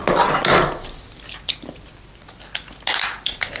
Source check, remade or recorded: recorded